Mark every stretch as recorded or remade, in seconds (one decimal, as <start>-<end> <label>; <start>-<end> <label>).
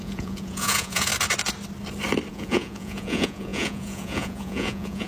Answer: 0.0-1.1 remade; 1.1-2.3 recorded; 2.3-5.1 remade